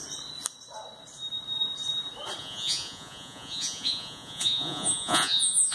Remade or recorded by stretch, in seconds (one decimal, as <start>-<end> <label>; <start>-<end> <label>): 0.0-2.4 recorded; 2.4-5.7 remade